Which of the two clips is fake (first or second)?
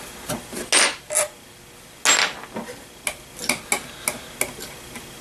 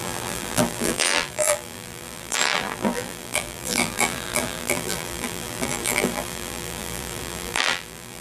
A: second